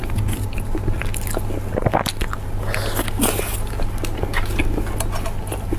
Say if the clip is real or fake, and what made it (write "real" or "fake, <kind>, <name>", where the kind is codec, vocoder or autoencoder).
real